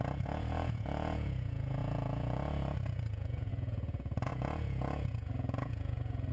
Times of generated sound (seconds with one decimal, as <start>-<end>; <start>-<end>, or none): 0.0-6.3

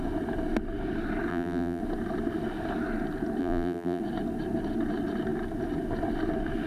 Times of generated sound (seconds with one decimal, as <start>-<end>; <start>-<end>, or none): 1.3-1.8; 3.4-4.0

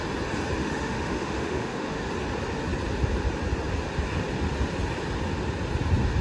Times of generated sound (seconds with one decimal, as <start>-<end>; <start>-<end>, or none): 0.6-2.0

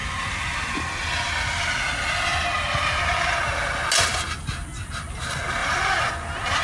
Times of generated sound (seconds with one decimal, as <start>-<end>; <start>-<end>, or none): 0.0-1.0; 5.6-6.1

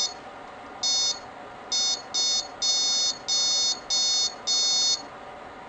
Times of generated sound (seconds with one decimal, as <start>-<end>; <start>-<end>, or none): none

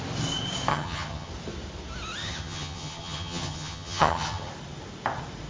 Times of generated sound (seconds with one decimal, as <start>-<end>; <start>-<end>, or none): 0.7-1.3; 2.2-4.5

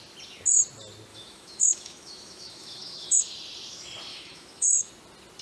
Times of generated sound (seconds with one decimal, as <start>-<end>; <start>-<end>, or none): 1.1-3.2; 4.1-4.9